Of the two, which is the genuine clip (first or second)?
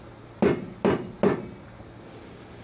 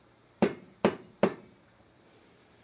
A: first